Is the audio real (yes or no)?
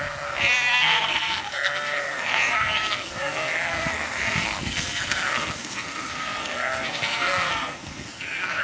no